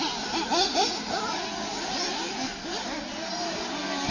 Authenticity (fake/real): real